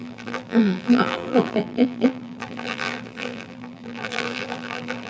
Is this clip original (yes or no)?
no